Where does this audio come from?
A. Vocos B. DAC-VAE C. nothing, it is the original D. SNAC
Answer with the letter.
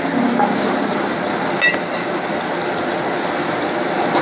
C